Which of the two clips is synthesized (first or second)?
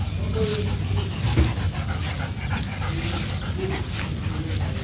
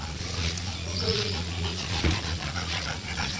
second